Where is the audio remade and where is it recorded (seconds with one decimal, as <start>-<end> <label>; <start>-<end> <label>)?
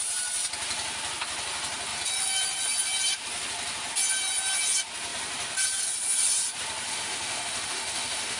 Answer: 0.0-6.9 recorded; 6.9-8.4 remade